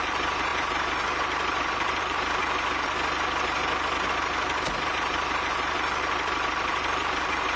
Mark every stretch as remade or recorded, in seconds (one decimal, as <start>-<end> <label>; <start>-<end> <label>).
0.0-2.4 remade; 2.4-4.9 recorded; 4.9-7.6 remade